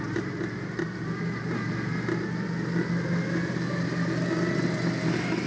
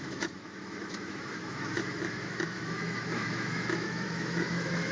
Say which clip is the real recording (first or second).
first